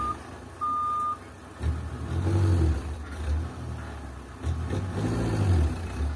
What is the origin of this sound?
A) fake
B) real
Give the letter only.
B